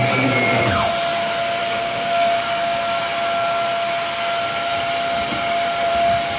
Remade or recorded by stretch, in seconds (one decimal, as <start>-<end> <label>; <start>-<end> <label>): 0.0-1.6 recorded; 1.6-3.0 remade; 3.0-6.4 recorded